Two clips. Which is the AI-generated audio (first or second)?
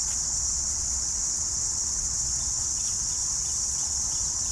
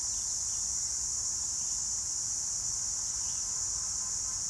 first